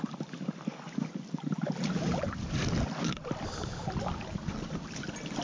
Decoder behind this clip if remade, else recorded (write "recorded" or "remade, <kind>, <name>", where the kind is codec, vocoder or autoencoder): recorded